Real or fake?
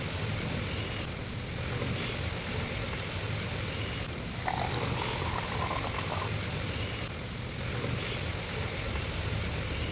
real